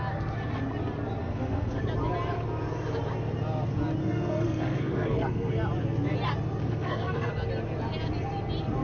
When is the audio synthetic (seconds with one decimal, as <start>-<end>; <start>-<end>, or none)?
1.2-1.8; 4.0-5.5; 6.6-7.3